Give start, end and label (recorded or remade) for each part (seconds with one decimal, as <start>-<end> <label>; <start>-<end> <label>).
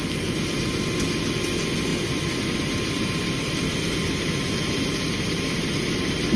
0.0-1.9 recorded; 1.9-3.9 remade; 3.9-6.4 recorded